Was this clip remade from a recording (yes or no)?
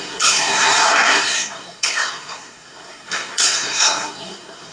yes